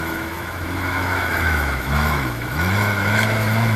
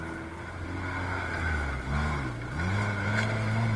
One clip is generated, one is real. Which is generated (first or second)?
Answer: first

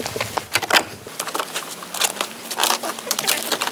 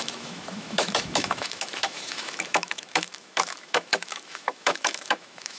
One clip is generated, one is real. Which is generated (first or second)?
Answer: second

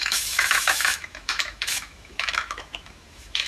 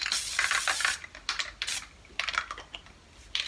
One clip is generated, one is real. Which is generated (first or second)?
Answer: first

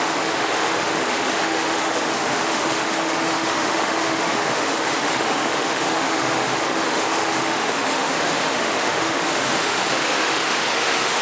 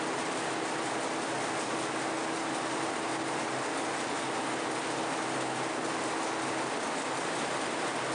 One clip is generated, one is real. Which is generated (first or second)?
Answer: first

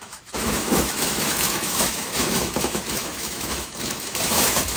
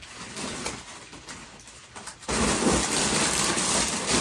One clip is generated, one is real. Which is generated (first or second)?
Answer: first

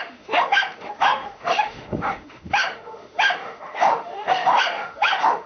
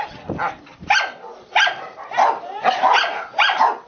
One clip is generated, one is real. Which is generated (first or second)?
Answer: first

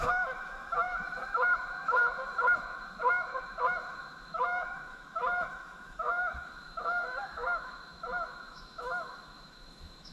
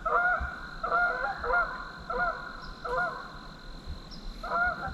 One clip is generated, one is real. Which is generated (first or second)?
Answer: first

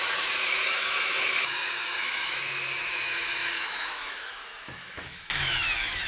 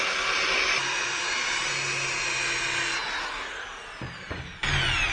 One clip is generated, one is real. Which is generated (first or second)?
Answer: first